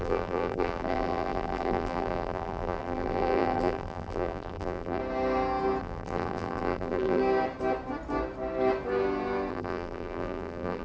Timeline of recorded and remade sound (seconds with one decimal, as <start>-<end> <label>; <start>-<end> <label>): 0.0-5.0 remade; 5.0-5.8 recorded; 5.8-7.2 remade; 7.2-9.5 recorded; 9.5-10.8 remade